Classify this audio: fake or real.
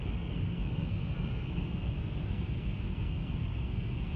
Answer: fake